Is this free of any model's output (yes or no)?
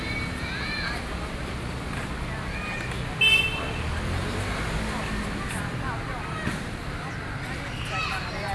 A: yes